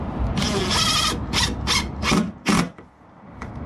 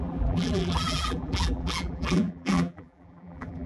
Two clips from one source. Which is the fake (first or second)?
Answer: second